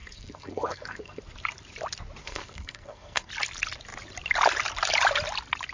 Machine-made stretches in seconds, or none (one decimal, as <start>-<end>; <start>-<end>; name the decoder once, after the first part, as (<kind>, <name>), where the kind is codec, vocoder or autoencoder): 0.0-1.2 (codec, SNAC); 2.2-3.3